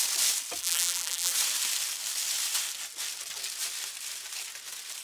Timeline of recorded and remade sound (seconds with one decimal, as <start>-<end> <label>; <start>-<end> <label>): 0.0-0.6 recorded; 0.6-1.3 remade; 1.3-5.0 recorded